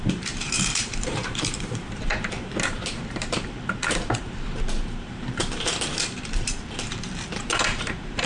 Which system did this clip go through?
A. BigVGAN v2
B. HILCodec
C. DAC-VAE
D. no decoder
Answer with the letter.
A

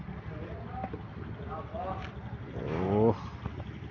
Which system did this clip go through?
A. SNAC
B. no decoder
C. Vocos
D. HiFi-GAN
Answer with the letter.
B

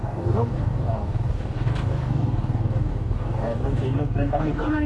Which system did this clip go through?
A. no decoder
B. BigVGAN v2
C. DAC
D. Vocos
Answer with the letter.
C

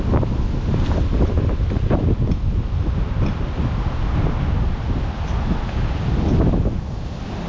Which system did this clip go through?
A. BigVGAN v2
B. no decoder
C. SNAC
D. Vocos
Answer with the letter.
B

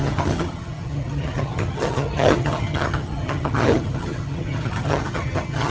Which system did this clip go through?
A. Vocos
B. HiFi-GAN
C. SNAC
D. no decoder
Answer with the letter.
B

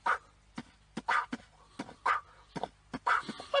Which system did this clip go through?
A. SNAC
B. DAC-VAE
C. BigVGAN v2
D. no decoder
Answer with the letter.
D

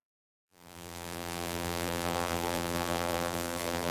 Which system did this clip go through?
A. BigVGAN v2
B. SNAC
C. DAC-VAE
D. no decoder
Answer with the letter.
A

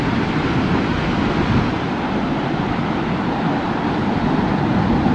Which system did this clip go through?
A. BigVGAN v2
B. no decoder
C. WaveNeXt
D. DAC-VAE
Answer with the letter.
B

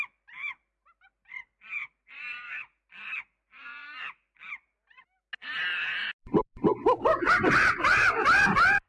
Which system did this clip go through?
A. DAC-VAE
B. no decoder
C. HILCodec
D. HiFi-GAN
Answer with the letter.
B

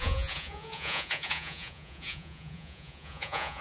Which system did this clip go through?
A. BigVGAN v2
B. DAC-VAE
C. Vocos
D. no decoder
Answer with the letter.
C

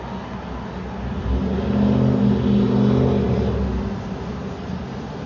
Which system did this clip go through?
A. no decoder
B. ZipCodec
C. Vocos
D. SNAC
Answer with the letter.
A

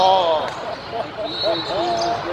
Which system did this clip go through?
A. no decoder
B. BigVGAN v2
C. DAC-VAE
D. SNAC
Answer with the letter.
A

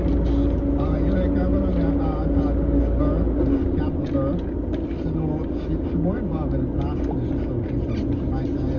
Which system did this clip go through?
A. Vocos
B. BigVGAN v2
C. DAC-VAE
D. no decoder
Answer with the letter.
D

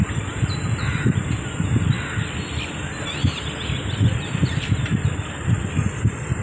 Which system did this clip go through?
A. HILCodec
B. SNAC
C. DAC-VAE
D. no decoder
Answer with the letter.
D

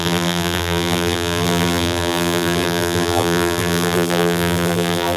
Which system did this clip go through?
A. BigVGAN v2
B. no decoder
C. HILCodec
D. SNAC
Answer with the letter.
A